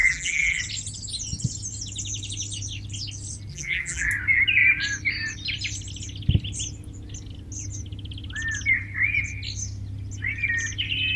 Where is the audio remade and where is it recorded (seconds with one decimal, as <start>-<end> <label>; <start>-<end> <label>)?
0.0-0.6 remade; 0.6-3.5 recorded; 3.5-4.1 remade; 4.1-11.2 recorded